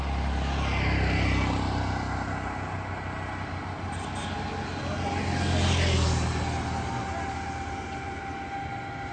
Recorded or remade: recorded